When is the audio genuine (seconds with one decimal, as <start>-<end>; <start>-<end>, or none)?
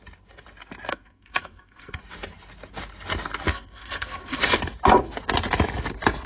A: 0.0-0.9; 2.0-3.5; 4.4-6.3